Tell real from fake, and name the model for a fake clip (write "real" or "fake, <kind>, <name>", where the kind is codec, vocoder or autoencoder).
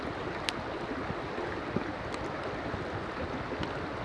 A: real